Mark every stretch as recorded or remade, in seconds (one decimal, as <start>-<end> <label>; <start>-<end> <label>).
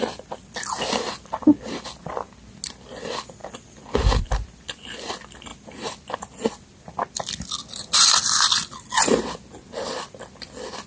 0.0-10.9 recorded